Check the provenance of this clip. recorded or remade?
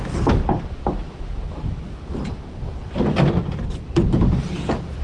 recorded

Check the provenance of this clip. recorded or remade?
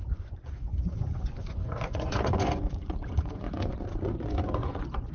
remade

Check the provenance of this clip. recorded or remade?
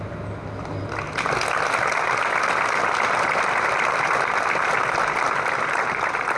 recorded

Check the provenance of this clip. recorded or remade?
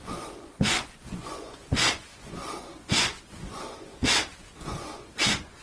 remade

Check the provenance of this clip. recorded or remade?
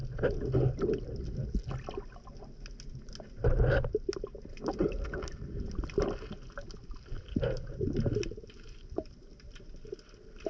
recorded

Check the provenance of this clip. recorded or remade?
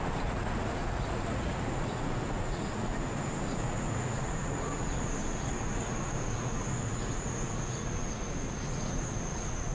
remade